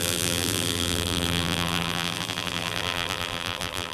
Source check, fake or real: fake